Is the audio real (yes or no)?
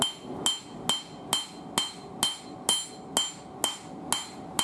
yes